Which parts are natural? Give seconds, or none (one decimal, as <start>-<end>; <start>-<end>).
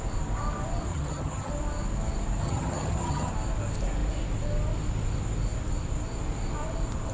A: 0.0-0.9; 1.5-2.4; 3.3-7.1